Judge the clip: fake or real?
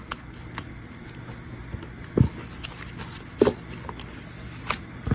real